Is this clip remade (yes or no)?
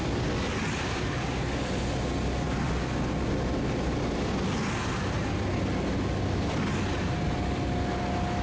no